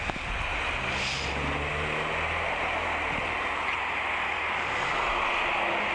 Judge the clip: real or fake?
real